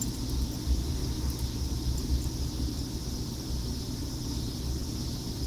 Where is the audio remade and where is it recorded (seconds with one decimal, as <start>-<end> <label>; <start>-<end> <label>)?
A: 0.0-5.5 remade